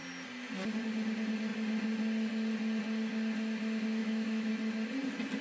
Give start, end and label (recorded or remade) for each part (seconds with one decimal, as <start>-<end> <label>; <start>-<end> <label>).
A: 0.0-4.0 recorded; 4.0-4.5 remade; 4.5-5.4 recorded